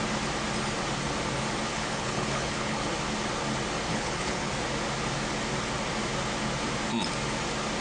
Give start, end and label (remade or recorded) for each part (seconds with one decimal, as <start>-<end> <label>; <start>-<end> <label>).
0.0-1.7 recorded; 1.7-2.9 remade; 2.9-3.9 recorded; 3.9-4.5 remade; 4.5-7.8 recorded